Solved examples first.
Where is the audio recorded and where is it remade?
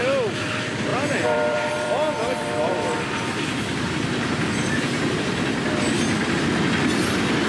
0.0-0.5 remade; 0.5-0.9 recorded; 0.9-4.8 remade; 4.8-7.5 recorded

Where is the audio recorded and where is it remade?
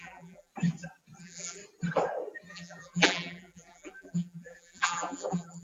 0.0-0.5 remade; 0.5-1.2 recorded; 1.2-1.6 remade; 1.6-2.5 recorded; 2.5-5.6 remade